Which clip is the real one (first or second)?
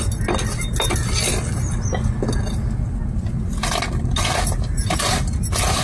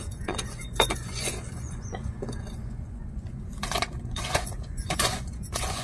first